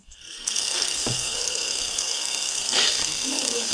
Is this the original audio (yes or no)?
no